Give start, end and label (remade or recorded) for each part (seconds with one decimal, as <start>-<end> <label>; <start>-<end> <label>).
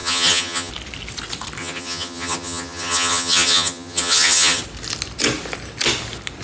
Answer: 0.0-0.7 remade; 0.7-1.6 recorded; 1.6-4.6 remade; 4.6-6.4 recorded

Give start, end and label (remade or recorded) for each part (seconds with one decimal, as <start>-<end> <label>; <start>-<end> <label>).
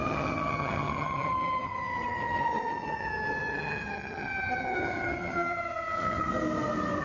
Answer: 0.0-6.3 remade; 6.3-7.0 recorded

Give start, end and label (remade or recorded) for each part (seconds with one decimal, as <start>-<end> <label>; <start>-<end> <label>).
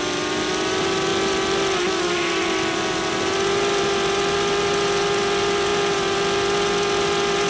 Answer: 0.0-7.5 recorded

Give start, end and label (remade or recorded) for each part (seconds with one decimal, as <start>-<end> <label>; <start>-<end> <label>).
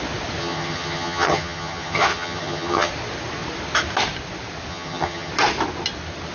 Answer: 0.0-0.4 recorded; 0.4-2.9 remade; 2.9-4.7 recorded; 4.7-5.3 remade; 5.3-6.3 recorded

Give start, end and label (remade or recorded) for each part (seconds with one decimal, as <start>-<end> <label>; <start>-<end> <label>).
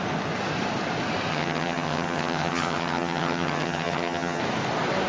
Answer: 0.0-1.3 recorded; 1.3-4.4 remade; 4.4-5.1 recorded